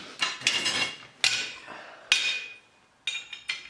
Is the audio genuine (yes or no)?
yes